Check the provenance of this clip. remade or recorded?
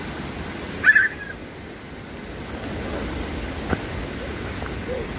recorded